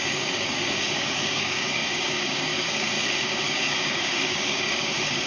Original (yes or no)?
no